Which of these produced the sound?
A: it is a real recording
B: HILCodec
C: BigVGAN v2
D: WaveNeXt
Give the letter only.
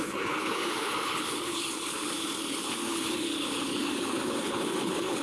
B